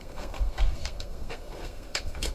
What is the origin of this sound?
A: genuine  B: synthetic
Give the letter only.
B